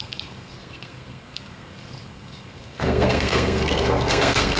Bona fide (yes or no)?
no